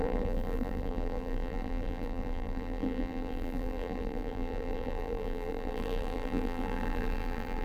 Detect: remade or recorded remade